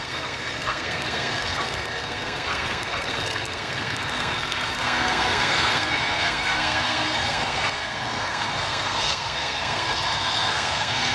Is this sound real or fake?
fake